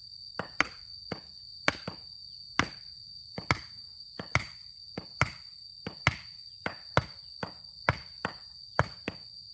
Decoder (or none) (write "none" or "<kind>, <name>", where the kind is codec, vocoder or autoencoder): none